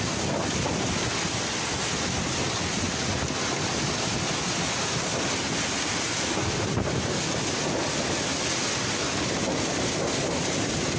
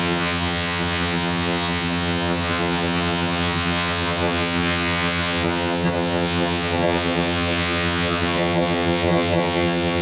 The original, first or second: first